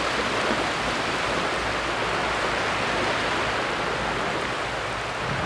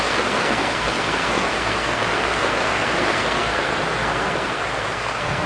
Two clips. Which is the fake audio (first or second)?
second